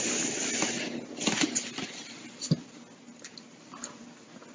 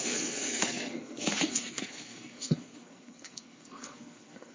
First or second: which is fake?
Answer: second